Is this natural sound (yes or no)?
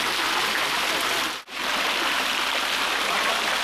yes